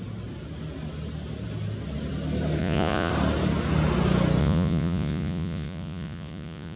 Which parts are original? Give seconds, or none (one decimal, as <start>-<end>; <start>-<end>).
0.0-2.6; 3.1-4.4